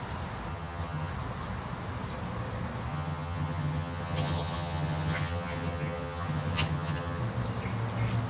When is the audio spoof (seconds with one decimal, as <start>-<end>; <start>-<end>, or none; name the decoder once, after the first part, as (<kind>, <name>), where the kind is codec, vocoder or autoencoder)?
0.5-1.1 (vocoder, HiFi-GAN); 2.9-7.2

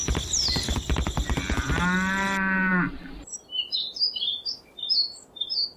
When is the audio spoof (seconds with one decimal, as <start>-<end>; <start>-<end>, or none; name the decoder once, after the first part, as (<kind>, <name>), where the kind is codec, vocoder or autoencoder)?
none

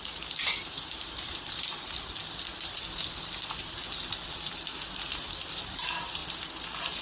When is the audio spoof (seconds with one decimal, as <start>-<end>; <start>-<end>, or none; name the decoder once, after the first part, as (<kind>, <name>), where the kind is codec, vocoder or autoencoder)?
0.0-2.2 (vocoder, BigVGAN v2); 5.7-7.0

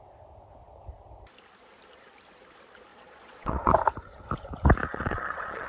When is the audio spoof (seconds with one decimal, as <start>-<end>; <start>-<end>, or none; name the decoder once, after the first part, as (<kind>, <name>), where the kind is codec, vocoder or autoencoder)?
2.9-3.7 (vocoder, Vocos); 4.9-5.7

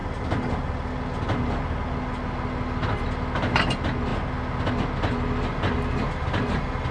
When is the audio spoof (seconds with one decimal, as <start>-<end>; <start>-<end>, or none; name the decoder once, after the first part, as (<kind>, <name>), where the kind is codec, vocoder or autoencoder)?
none

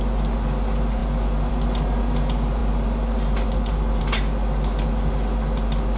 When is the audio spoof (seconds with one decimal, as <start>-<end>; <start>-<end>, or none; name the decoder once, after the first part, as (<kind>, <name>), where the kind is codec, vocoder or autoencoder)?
none

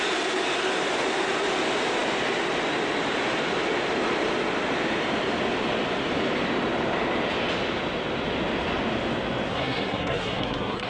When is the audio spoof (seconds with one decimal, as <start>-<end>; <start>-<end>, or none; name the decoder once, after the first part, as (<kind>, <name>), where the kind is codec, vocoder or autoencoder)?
9.5-10.9 (codec, SNAC)